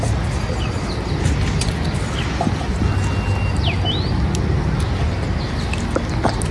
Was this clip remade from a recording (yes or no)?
no